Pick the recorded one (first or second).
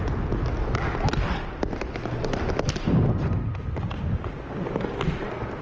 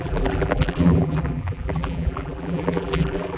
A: first